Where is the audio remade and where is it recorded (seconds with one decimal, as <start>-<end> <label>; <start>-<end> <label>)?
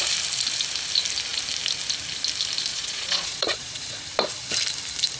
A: 0.0-2.7 recorded; 2.7-4.0 remade; 4.0-5.2 recorded